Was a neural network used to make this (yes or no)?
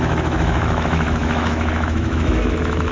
yes